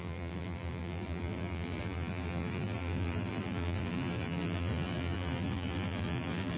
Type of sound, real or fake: fake